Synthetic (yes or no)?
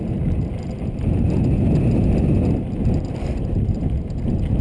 no